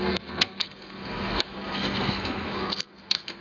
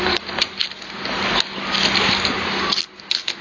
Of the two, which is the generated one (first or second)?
first